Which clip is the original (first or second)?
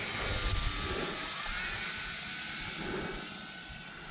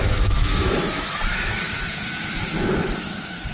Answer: first